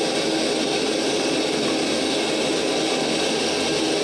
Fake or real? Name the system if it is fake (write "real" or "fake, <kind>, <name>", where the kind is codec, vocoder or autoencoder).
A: real